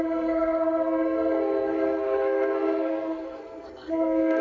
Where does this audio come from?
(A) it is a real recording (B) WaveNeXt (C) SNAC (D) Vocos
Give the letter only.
C